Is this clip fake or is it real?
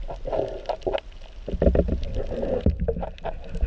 real